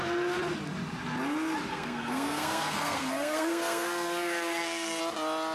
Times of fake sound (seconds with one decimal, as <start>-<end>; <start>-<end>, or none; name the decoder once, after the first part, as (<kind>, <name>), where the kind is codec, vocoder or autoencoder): 1.7-5.0 (codec, SNAC)